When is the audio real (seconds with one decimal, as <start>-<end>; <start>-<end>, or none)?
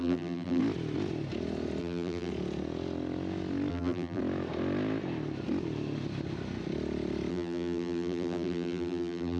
0.6-1.8; 2.3-3.7; 4.2-7.3